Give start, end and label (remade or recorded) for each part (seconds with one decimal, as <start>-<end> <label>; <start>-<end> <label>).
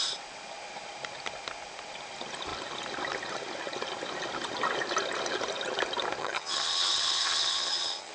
0.0-6.2 recorded; 6.2-8.1 remade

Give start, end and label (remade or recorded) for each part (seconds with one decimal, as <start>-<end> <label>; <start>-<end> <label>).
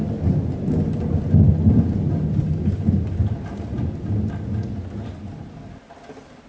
0.0-6.5 recorded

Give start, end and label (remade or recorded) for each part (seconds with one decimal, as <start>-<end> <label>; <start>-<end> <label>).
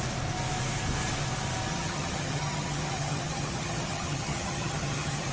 0.0-1.7 recorded; 1.7-5.3 remade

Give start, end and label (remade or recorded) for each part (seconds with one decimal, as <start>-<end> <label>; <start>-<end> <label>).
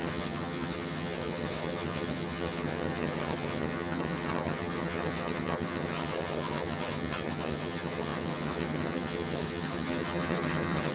0.0-10.9 remade